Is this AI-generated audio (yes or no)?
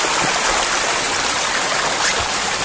yes